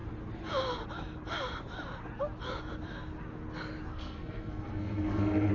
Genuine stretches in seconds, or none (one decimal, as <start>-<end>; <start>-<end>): 0.0-3.9